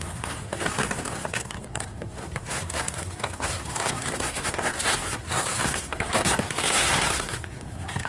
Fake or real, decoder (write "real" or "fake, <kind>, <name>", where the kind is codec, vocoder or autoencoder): fake, codec, SNAC